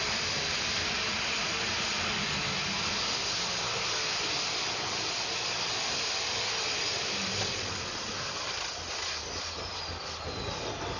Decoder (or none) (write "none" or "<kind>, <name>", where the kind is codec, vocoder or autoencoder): none